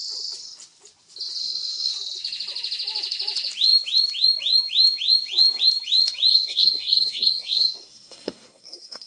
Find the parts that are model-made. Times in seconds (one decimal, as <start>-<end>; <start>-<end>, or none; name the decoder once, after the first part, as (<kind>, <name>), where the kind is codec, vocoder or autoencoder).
1.4-1.9 (codec, SNAC); 6.3-9.1